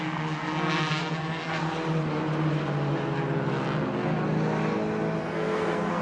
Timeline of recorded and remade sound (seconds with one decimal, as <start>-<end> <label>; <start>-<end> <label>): 0.0-1.6 remade; 1.6-5.2 recorded; 5.2-6.0 remade